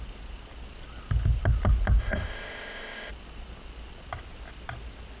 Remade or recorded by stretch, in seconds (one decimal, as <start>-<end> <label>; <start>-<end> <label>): 0.0-2.0 recorded; 2.0-3.1 remade; 3.1-5.2 recorded